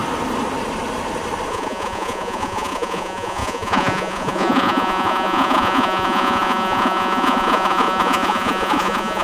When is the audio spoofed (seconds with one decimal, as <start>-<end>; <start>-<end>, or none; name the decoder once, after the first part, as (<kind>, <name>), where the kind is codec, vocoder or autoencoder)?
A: 1.5-9.2 (vocoder, Vocos)